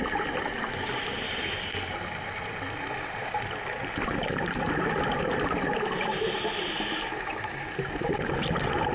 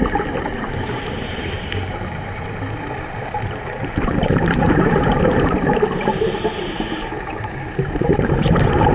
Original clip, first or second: first